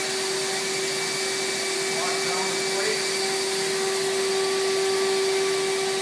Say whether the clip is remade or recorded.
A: recorded